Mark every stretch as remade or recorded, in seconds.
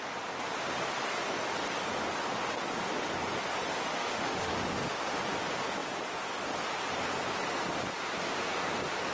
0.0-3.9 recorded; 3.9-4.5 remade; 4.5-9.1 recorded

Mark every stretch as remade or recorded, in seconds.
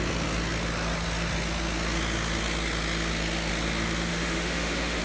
0.0-4.1 recorded; 4.1-5.0 remade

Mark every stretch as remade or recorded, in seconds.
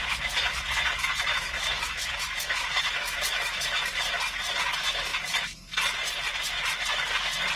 0.0-1.3 recorded; 1.3-3.8 remade; 3.8-7.6 recorded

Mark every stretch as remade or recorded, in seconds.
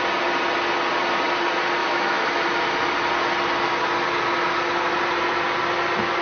0.0-1.8 recorded; 1.8-2.3 remade; 2.3-6.2 recorded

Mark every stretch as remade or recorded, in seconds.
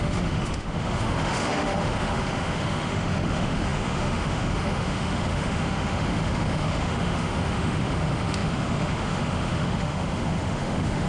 0.0-11.1 remade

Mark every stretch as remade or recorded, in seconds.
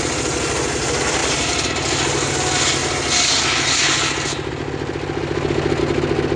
0.0-6.4 recorded